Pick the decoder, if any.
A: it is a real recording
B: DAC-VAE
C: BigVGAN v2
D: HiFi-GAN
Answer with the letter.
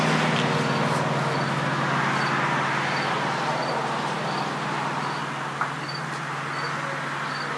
A